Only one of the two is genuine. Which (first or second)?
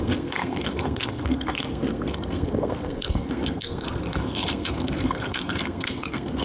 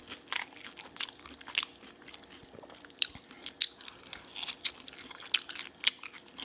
second